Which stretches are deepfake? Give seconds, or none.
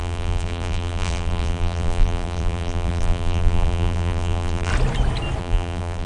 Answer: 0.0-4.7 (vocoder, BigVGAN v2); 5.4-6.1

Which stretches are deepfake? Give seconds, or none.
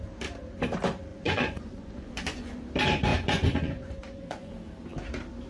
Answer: 1.1-2.6 (vocoder, Vocos); 3.1-4.5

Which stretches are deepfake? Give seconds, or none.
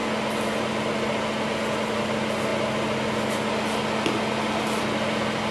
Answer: none